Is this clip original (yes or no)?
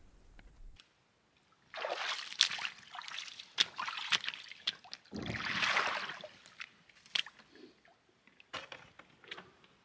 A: yes